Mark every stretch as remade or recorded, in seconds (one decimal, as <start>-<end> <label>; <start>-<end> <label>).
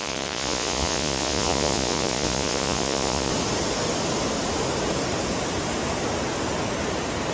0.0-3.3 remade; 3.3-7.3 recorded